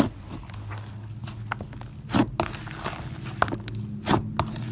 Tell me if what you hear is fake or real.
real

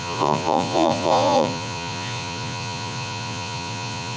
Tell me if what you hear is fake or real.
fake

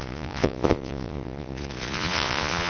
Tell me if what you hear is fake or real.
fake